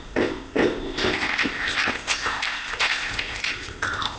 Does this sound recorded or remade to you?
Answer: remade